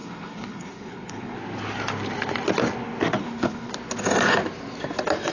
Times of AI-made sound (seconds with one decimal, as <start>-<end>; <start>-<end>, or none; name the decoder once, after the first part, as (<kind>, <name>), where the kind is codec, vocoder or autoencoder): 0.0-1.4 (codec, HILCodec); 3.2-3.7